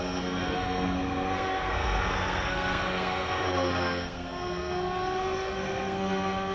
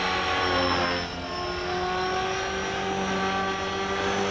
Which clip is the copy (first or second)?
first